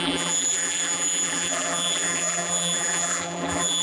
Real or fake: fake